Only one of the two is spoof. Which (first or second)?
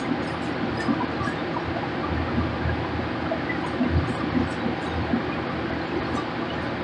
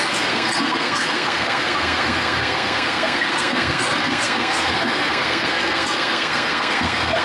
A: second